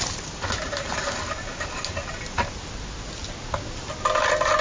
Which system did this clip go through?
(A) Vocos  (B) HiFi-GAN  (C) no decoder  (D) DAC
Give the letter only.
C